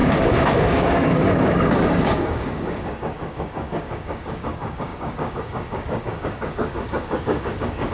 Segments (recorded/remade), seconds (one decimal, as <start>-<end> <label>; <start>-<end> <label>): 0.0-7.9 remade